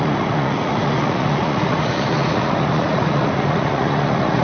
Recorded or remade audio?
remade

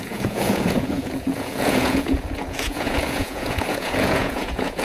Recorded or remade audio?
remade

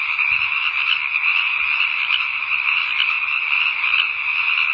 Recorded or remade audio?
recorded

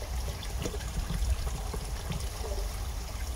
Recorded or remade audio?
recorded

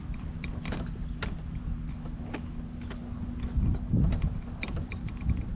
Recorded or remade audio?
recorded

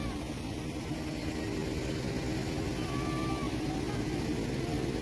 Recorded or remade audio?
recorded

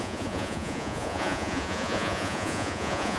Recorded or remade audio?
remade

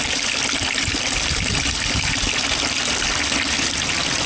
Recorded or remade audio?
recorded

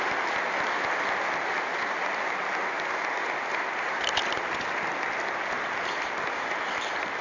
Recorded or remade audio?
recorded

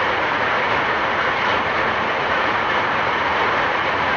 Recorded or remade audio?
remade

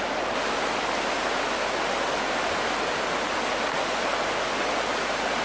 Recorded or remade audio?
recorded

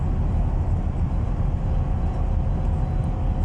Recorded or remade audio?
recorded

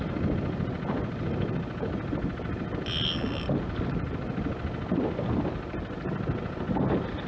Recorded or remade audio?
recorded